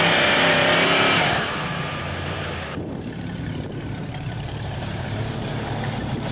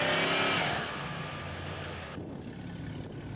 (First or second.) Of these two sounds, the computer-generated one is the first